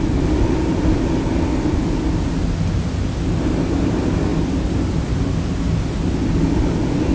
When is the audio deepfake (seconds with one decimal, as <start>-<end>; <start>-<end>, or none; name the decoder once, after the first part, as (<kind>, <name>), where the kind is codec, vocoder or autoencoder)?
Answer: none